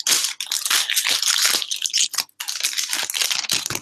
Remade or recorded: recorded